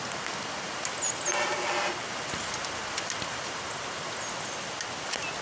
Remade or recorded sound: recorded